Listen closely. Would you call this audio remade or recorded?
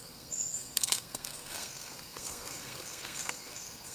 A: remade